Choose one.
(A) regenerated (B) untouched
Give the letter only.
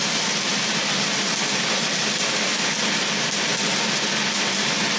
B